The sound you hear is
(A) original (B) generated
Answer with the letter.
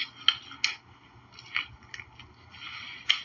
A